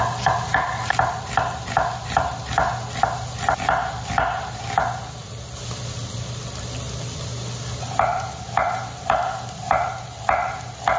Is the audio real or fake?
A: real